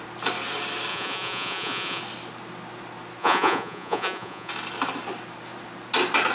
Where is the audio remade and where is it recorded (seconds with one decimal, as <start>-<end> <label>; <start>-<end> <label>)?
0.0-0.9 recorded; 0.9-2.0 remade; 2.0-3.2 recorded; 3.2-4.5 remade; 4.5-6.3 recorded